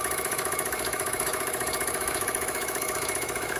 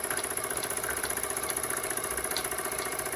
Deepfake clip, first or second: first